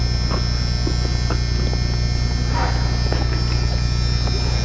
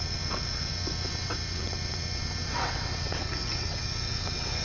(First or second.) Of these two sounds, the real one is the first